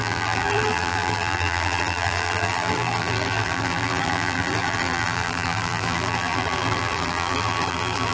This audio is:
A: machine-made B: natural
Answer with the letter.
A